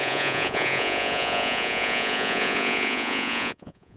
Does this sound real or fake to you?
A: fake